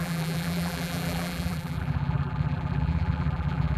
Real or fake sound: fake